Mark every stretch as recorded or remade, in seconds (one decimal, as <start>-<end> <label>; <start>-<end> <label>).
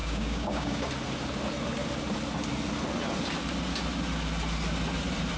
0.0-0.9 remade; 0.9-5.4 recorded